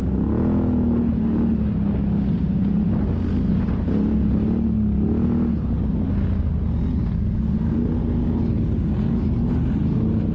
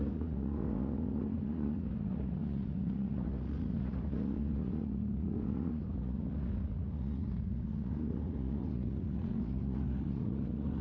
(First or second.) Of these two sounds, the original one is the first